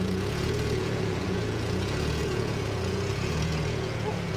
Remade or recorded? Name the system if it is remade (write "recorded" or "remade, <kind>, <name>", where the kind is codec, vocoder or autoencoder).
remade, vocoder, Vocos